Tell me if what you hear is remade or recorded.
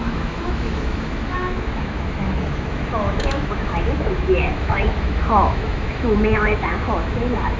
remade